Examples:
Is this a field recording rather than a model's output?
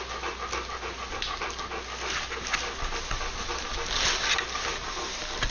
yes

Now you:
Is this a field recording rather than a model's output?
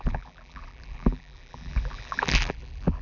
no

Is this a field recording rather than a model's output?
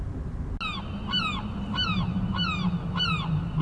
yes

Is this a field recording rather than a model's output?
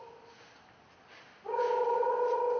yes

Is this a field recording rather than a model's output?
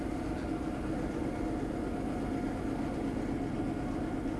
yes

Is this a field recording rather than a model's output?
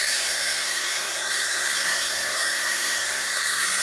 no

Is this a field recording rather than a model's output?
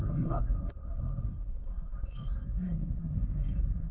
no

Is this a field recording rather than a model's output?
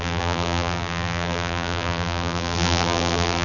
no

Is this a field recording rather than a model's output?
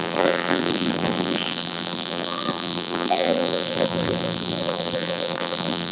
no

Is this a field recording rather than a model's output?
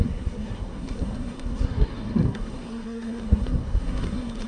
no